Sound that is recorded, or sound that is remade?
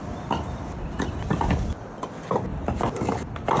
recorded